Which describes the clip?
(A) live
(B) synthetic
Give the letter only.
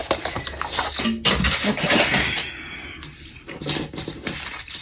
A